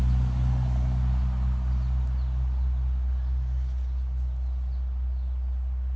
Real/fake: real